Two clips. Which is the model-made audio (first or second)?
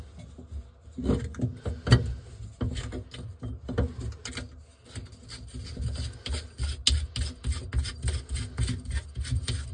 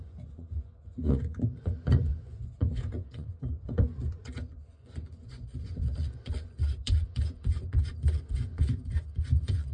second